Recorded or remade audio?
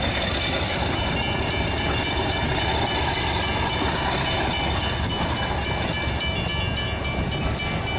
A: recorded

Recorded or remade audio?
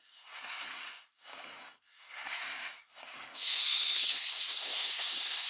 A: remade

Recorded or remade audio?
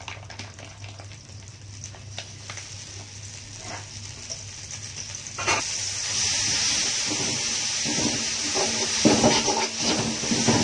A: recorded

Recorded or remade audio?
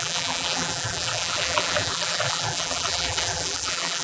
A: remade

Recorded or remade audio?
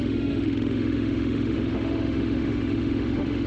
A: remade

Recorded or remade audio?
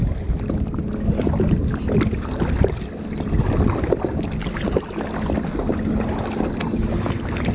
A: recorded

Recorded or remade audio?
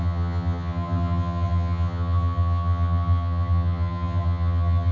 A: remade